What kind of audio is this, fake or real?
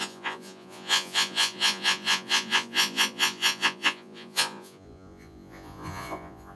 fake